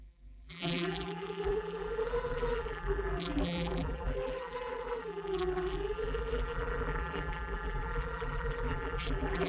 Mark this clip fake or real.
fake